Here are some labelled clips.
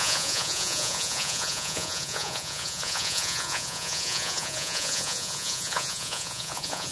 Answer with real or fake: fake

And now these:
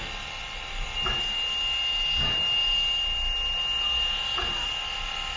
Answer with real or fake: real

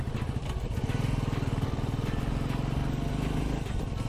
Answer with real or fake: real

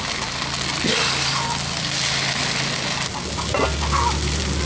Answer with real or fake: real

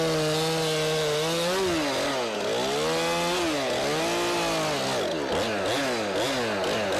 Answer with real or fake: real